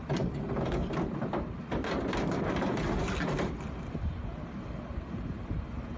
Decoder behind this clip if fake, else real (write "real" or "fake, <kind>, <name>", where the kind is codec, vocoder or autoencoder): real